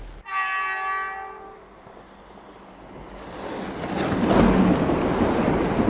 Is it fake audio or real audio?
real